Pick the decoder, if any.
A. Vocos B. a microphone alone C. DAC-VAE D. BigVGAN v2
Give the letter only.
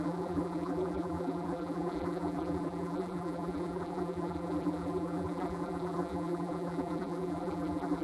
D